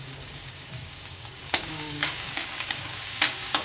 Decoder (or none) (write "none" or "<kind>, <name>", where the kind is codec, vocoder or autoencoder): codec, DAC